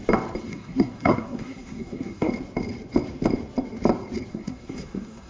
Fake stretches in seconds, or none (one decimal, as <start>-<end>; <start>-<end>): 0.5-2.3; 4.3-5.3